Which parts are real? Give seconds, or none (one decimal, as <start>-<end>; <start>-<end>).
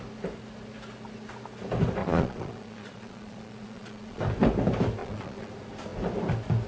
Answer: 0.0-2.0; 4.2-5.0; 5.5-6.7